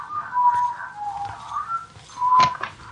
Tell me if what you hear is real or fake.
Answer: real